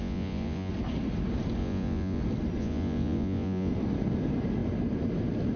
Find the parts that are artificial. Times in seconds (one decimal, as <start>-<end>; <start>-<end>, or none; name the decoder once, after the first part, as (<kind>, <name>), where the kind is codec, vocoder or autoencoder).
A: 0.0-0.7 (vocoder, Vocos); 1.6-2.2; 2.6-3.7